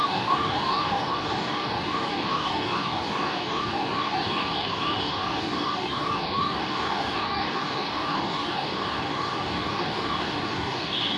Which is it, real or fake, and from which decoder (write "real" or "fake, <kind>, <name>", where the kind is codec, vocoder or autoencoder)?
fake, codec, DAC